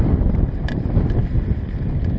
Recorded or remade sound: recorded